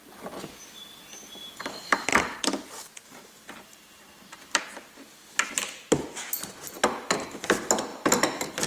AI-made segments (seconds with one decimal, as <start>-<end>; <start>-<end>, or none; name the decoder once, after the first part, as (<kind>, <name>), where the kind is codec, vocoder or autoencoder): 2.1-4.6 (vocoder, BigVGAN v2); 7.9-8.7